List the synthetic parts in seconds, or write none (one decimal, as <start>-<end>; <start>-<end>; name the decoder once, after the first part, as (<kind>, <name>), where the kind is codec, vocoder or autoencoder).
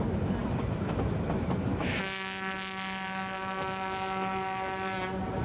none